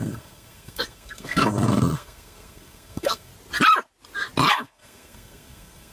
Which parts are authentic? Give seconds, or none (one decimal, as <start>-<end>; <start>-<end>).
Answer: 3.3-4.5